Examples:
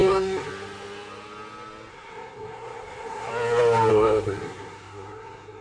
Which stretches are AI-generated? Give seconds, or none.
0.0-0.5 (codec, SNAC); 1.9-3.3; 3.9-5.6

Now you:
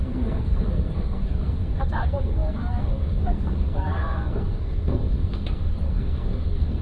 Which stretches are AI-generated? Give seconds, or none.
0.0-6.8 (codec, SNAC)